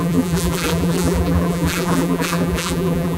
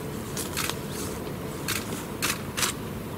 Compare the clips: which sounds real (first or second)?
second